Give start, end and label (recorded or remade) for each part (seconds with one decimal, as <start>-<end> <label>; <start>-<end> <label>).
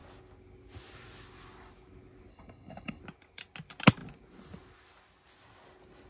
0.0-2.3 recorded; 2.3-3.0 remade; 3.0-6.1 recorded